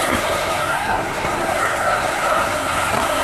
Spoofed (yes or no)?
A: yes